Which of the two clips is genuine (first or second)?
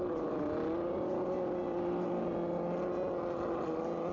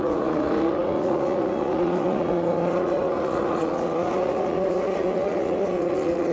first